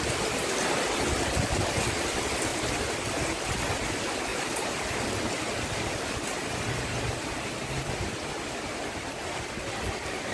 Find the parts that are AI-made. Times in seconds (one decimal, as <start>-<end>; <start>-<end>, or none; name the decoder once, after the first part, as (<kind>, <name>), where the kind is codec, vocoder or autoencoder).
4.3-9.4 (vocoder, BigVGAN v2)